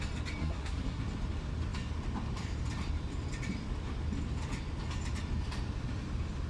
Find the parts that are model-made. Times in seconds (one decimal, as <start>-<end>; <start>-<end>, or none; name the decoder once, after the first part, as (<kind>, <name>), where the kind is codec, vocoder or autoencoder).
0.4-1.0 (codec, SNAC)